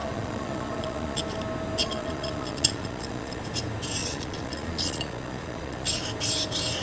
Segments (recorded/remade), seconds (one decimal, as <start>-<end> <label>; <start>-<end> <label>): 0.0-1.2 remade; 1.2-1.8 recorded; 1.8-3.4 remade; 3.4-4.0 recorded; 4.0-6.0 remade; 6.0-6.8 recorded